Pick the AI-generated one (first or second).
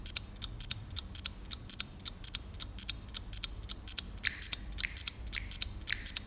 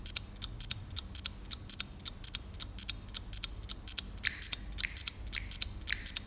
first